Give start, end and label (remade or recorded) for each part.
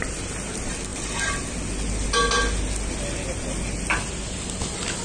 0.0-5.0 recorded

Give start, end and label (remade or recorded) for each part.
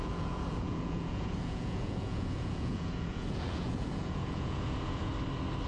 0.0-5.1 remade; 5.1-5.7 recorded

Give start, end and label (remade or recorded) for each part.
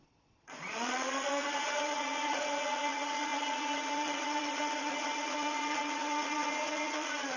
0.0-7.4 remade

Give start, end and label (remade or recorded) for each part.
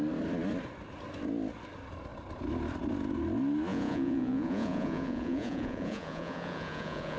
0.0-3.7 recorded; 3.7-7.2 remade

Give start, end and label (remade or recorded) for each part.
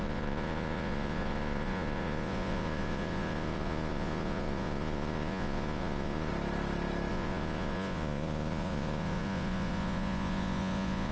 0.0-6.3 remade; 6.3-7.1 recorded; 7.1-11.1 remade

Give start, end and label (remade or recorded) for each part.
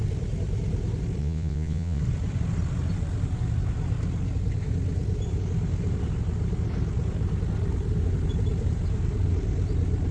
0.0-1.2 recorded; 1.2-2.0 remade; 2.0-10.1 recorded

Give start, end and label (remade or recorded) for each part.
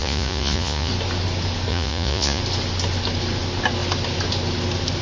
0.0-0.9 remade; 0.9-1.7 recorded; 1.7-2.4 remade; 2.4-5.0 recorded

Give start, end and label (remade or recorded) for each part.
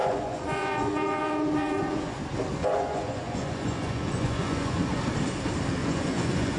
0.0-2.2 remade; 2.2-2.6 recorded; 2.6-5.0 remade; 5.0-5.8 recorded; 5.8-6.6 remade